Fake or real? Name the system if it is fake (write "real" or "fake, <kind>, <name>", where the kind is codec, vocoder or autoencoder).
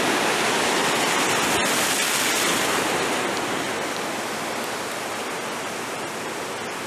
real